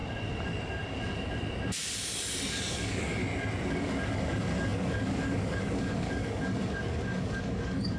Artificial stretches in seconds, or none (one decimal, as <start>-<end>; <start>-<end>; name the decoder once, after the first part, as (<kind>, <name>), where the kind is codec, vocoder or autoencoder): 2.7-3.2 (codec, DAC); 3.7-8.0